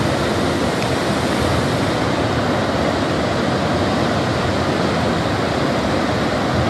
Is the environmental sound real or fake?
real